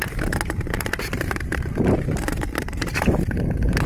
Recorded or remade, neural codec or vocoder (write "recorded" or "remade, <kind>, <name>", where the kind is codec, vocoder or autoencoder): remade, vocoder, BigVGAN v2